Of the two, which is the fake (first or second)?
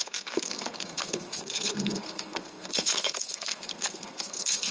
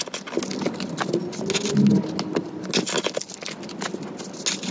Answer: first